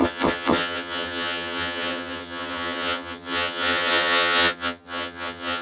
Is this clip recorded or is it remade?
remade